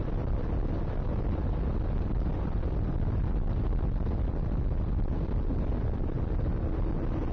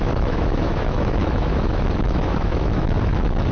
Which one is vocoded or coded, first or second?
second